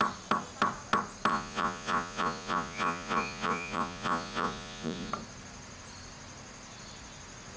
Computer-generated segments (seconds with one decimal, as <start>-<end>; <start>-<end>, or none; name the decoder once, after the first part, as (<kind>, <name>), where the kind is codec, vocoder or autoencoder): 1.3-5.1 (vocoder, Vocos)